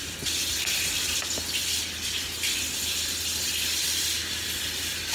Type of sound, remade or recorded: recorded